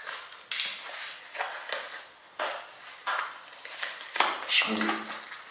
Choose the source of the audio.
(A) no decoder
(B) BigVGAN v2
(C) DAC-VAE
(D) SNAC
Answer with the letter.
A